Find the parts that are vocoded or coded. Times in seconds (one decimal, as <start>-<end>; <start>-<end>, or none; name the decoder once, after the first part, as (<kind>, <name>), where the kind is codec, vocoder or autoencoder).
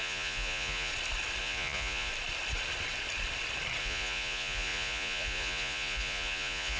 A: 0.0-0.9 (vocoder, Vocos); 1.4-2.1; 3.8-6.8